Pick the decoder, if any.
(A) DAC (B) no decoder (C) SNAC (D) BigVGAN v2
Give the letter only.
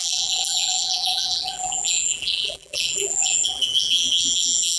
D